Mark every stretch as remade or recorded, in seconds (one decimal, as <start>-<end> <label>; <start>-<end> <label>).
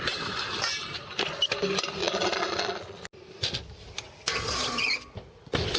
0.0-2.0 recorded; 2.0-3.0 remade; 3.0-5.8 recorded